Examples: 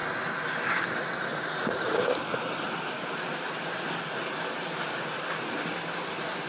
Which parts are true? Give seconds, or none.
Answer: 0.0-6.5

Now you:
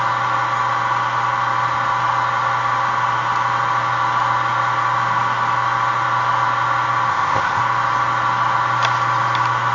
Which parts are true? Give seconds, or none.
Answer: 0.0-7.1; 7.6-9.7

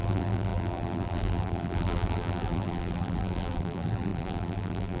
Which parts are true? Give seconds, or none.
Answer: none